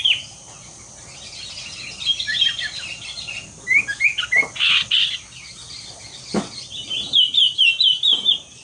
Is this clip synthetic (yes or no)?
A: no